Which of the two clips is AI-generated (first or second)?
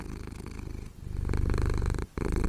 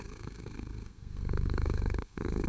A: second